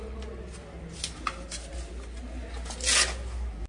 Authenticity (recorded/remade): recorded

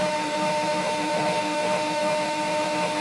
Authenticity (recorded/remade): remade